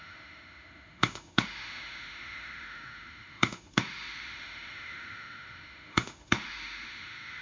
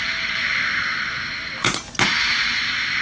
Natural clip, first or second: second